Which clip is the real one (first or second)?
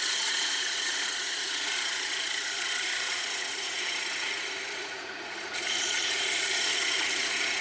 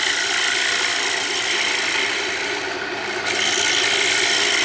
second